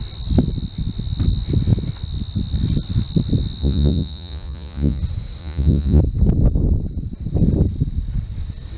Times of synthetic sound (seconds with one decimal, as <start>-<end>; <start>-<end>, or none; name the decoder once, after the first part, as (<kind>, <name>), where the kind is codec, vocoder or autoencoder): 3.6-5.0 (vocoder, Vocos); 5.4-6.0